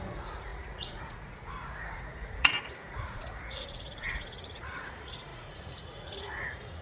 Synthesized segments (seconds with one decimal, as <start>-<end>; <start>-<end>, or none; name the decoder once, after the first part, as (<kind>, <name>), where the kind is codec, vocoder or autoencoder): 0.0-6.8 (vocoder, Vocos)